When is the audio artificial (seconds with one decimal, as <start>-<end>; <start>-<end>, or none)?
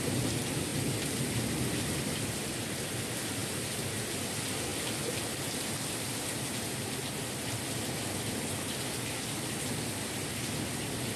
none